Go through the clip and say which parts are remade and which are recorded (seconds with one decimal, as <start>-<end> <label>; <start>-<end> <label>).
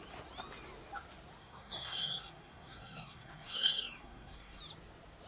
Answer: 0.0-1.4 recorded; 1.4-4.6 remade; 4.6-5.3 recorded